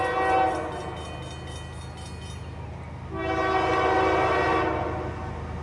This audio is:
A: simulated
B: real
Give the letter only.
B